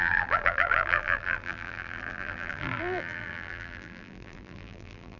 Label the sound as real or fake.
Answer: fake